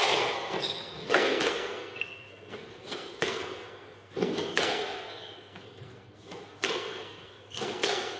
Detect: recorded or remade remade